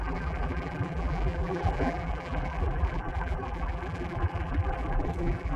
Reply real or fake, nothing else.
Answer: fake